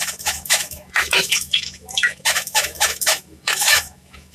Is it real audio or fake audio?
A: fake